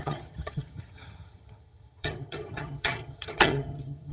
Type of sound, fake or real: fake